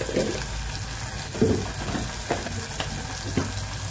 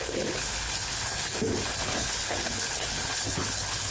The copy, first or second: second